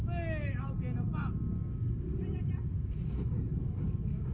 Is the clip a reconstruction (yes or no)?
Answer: no